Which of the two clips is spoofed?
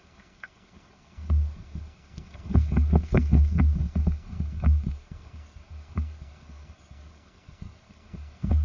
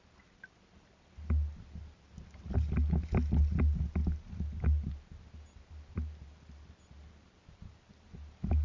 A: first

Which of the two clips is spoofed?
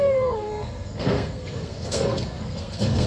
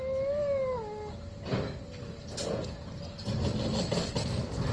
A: first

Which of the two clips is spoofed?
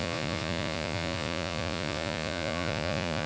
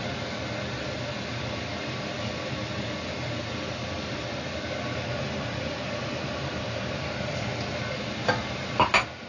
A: first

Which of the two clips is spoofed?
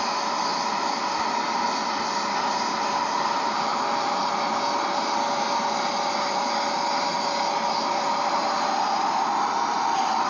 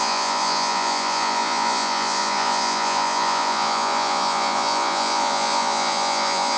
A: second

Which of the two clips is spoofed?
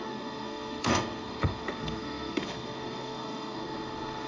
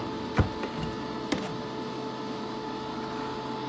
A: first